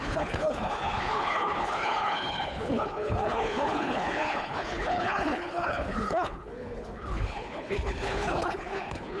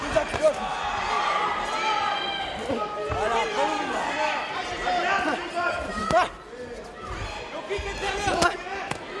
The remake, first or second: first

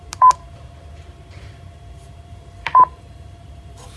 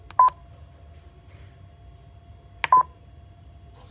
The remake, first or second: first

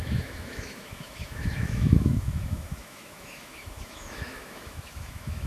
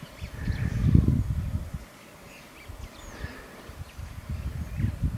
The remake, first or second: first